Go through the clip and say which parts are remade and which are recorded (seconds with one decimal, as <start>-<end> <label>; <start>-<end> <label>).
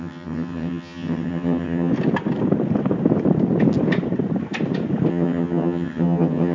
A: 0.0-1.9 remade; 1.9-5.1 recorded; 5.1-6.5 remade